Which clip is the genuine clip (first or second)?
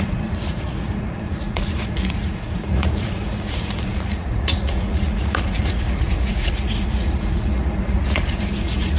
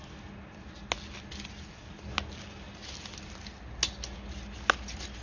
second